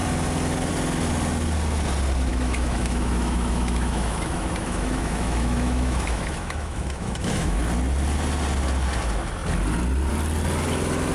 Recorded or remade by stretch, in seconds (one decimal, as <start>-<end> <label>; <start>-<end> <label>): 0.0-2.3 recorded; 2.3-7.6 remade; 7.6-11.1 recorded